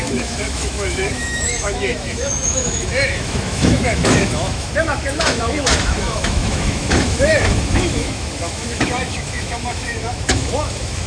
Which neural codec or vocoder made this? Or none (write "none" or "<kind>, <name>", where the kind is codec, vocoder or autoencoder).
autoencoder, DAC-VAE